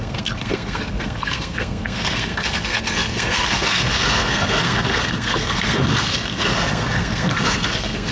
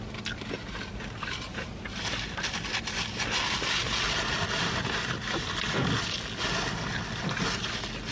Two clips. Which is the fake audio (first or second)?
first